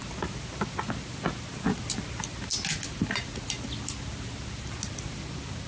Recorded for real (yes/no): yes